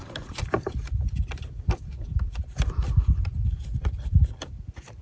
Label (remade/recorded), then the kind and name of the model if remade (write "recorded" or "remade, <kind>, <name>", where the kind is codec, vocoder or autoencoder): remade, vocoder, BigVGAN v2